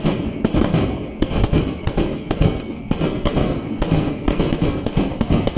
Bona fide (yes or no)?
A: no